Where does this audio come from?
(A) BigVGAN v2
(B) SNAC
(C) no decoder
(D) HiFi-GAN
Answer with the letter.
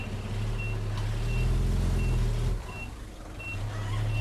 C